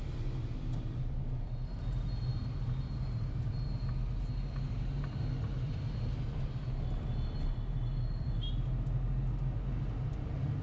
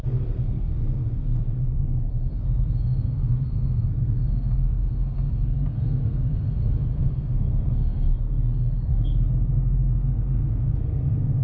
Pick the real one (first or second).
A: first